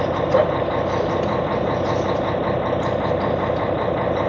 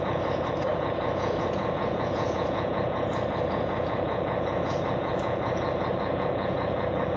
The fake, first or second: second